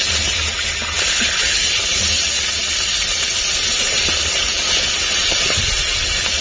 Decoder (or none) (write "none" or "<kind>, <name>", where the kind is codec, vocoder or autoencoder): none